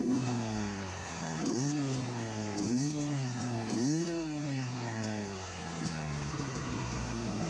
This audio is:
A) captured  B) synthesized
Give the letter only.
B